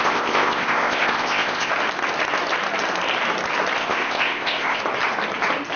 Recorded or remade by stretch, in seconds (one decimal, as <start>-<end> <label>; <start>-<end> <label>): 0.0-1.7 remade; 1.7-3.8 recorded; 3.8-4.8 remade; 4.8-5.8 recorded